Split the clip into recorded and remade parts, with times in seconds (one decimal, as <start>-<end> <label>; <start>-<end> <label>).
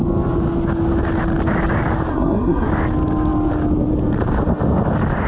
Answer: 0.0-2.1 recorded; 2.1-2.7 remade; 2.7-5.3 recorded